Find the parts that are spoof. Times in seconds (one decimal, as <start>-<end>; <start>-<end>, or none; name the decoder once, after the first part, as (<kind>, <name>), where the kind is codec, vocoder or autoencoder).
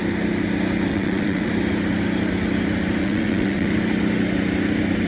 0.9-1.5 (vocoder, WaveNeXt); 3.0-3.7